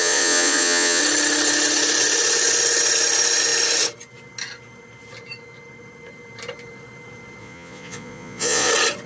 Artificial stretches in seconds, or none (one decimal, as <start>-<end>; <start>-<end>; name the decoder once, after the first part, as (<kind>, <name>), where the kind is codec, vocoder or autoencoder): 0.0-1.0 (vocoder, Vocos); 7.4-8.7